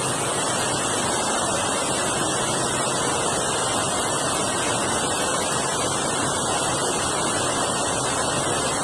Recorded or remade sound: recorded